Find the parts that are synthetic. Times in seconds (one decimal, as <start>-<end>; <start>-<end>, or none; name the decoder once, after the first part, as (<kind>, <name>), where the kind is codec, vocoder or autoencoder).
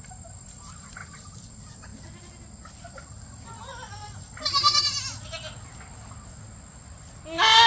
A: 1.0-1.5 (vocoder, BigVGAN v2)